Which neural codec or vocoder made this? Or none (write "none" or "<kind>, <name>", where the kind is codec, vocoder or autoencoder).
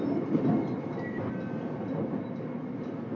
none